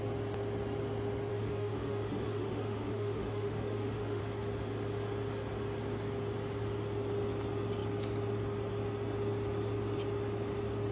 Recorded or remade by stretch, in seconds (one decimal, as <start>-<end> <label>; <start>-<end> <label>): 0.0-1.3 recorded; 1.3-4.2 remade; 4.2-10.9 recorded